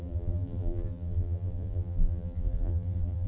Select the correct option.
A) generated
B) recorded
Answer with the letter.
A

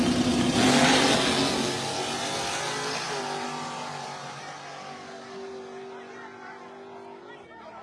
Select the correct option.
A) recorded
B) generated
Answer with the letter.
A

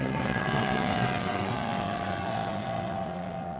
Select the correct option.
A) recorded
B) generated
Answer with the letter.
B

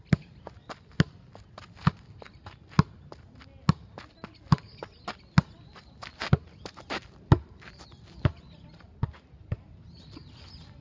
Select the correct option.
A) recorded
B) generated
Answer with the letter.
A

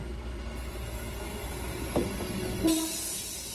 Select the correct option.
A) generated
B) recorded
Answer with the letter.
B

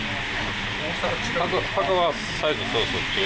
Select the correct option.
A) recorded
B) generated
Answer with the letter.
A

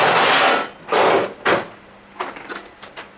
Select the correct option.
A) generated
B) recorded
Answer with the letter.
B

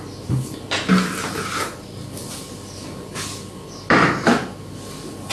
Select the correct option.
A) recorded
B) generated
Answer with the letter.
A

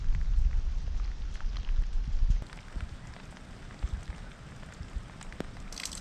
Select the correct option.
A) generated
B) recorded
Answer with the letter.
B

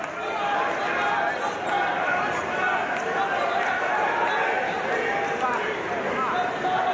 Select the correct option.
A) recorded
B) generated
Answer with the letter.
A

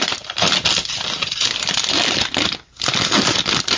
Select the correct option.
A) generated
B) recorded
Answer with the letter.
A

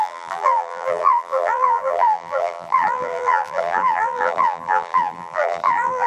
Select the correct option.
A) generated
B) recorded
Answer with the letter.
A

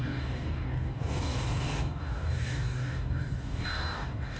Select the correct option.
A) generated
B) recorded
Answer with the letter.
A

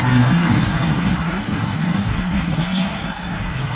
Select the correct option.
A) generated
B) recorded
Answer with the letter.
A